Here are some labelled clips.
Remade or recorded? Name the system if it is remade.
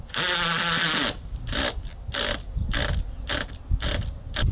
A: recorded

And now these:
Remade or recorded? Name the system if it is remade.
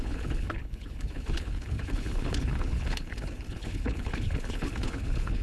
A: remade, codec, HILCodec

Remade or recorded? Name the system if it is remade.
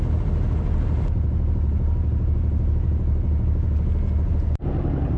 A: recorded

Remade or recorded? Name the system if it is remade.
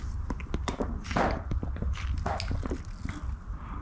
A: recorded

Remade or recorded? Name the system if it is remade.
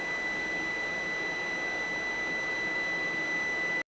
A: recorded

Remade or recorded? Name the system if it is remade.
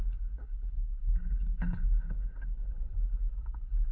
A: remade, codec, HILCodec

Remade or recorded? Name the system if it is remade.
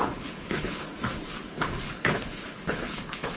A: remade, codec, HILCodec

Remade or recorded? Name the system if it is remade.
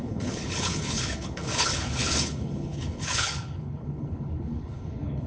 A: remade, codec, HILCodec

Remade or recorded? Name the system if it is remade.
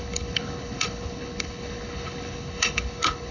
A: remade, codec, HILCodec